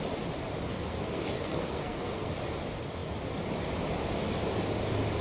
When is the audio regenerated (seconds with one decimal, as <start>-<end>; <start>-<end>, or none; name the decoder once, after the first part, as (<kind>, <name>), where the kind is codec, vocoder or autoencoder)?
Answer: 0.7-2.3 (codec, SNAC)